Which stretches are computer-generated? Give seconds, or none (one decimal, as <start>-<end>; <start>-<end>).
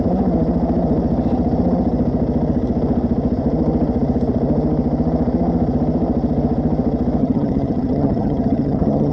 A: 7.2-9.1